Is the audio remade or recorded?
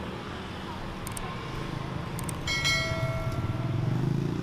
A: recorded